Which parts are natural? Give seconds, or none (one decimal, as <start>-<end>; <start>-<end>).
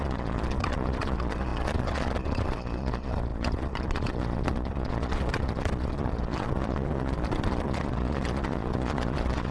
none